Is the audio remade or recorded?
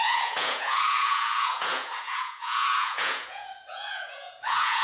remade